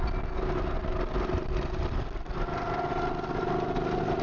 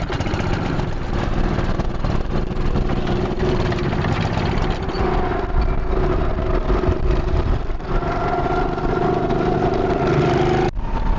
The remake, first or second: second